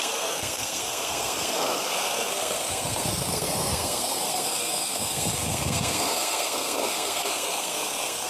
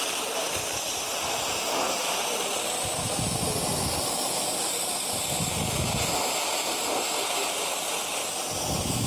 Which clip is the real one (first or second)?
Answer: second